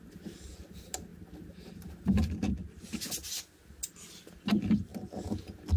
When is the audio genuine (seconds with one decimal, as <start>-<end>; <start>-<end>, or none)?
0.0-5.8